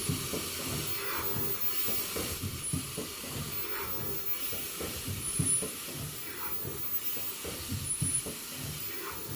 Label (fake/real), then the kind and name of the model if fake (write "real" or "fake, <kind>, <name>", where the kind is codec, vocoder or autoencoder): real